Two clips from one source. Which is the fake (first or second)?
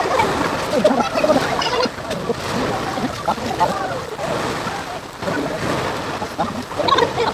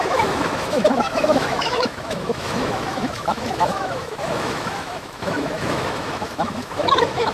second